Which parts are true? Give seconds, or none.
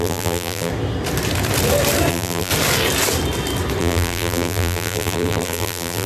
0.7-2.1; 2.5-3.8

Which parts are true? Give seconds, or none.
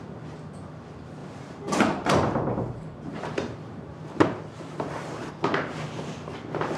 0.0-1.2; 5.3-6.8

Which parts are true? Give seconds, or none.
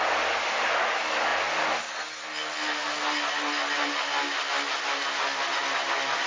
0.0-6.3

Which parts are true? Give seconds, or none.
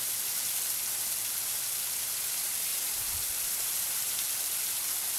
0.0-2.7; 4.2-5.2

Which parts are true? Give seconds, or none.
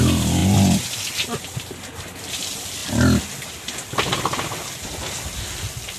0.0-6.0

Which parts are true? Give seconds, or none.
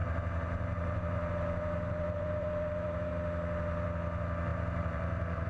3.1-4.5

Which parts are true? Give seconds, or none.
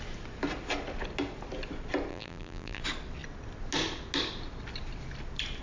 0.0-2.1; 2.8-5.6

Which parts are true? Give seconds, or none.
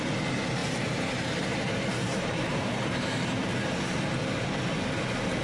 0.0-0.6; 3.8-5.4